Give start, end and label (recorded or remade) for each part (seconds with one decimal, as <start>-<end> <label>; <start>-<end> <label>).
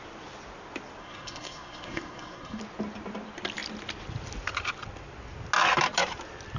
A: 0.0-1.0 recorded; 1.0-2.6 remade; 2.6-6.6 recorded